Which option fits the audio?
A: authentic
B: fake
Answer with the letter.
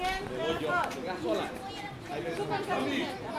A